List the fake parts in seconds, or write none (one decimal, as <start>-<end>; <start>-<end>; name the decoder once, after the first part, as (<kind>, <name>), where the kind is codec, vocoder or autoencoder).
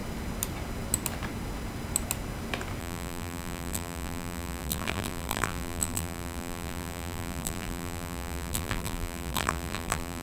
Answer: 2.8-10.2 (vocoder, BigVGAN v2)